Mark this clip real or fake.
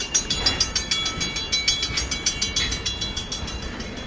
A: real